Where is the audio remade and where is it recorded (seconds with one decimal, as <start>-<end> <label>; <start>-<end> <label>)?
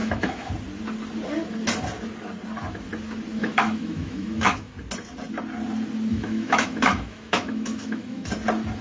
0.0-0.5 remade; 0.5-3.4 recorded; 3.4-4.7 remade; 4.7-6.1 recorded; 6.1-8.3 remade; 8.3-8.8 recorded